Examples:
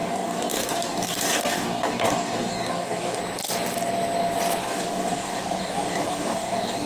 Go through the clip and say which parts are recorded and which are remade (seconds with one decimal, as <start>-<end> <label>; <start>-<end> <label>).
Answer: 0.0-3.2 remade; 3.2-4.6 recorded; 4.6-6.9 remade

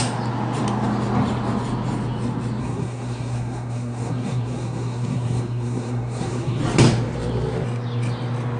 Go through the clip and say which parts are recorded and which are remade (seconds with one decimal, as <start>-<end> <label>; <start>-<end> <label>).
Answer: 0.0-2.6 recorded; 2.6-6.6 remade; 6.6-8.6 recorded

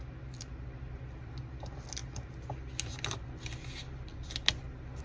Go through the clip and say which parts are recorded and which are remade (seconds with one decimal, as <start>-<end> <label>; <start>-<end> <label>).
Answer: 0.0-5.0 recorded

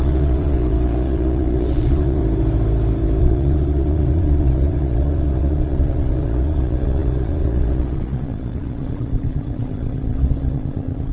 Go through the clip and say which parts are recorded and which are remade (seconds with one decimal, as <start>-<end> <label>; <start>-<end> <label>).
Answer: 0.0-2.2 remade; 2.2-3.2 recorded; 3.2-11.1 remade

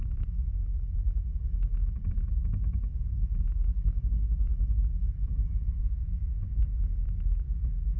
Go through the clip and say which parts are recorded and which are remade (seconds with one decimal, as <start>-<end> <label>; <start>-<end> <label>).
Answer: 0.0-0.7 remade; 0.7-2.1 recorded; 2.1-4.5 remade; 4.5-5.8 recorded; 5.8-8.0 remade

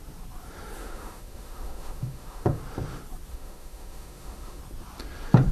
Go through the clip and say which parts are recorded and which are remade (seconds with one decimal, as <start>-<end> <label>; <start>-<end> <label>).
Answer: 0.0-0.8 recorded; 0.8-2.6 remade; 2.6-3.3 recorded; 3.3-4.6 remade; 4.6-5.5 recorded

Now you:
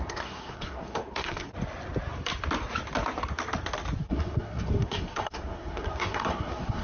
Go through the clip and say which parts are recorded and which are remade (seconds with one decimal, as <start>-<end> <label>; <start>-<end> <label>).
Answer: 0.0-1.5 remade; 1.5-4.0 recorded; 4.0-6.8 remade

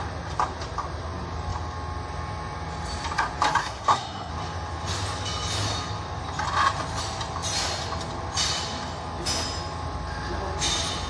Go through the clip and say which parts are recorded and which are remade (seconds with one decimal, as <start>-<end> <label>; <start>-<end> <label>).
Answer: 0.0-3.6 recorded; 3.6-4.3 remade; 4.3-11.1 recorded